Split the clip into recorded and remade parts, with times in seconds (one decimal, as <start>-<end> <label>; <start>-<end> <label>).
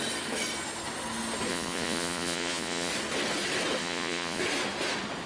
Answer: 0.0-1.5 recorded; 1.5-2.9 remade; 2.9-3.8 recorded; 3.8-4.4 remade; 4.4-5.3 recorded